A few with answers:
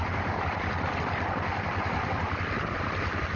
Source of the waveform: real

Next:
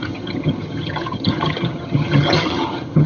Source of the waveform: fake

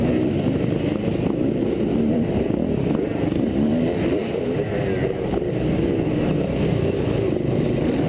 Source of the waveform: real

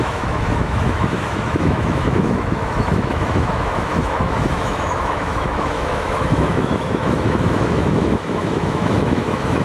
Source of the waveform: fake